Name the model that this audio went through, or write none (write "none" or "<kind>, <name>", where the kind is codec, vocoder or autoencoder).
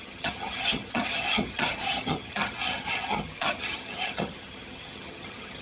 vocoder, HiFi-GAN